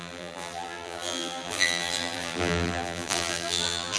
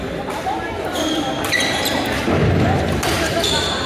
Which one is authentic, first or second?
second